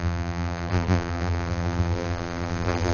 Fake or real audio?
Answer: fake